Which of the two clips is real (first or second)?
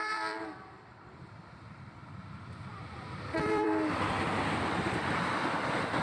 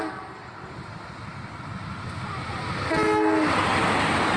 second